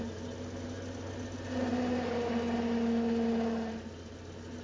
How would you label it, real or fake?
real